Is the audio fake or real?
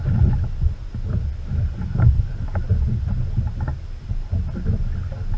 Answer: real